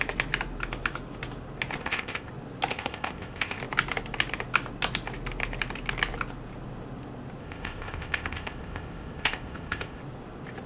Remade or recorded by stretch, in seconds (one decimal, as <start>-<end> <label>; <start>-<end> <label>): 0.0-1.8 recorded; 1.8-2.3 remade; 2.3-2.7 recorded; 2.7-3.6 remade; 3.6-7.4 recorded; 7.4-10.0 remade; 10.0-10.7 recorded